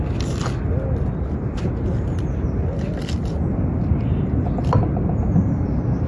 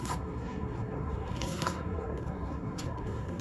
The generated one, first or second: second